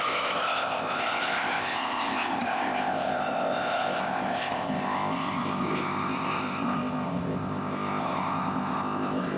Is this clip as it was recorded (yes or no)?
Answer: no